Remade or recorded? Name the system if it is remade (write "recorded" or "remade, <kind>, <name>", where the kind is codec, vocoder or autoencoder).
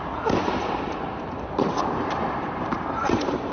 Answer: remade, vocoder, BigVGAN v2